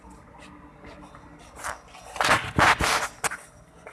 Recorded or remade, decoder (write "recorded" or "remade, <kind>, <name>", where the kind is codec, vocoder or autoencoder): recorded